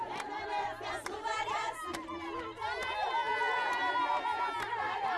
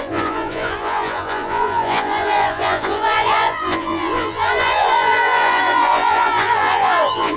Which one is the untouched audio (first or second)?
first